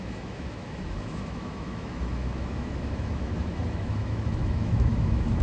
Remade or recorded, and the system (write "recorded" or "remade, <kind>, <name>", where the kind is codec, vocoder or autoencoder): remade, autoencoder, DAC-VAE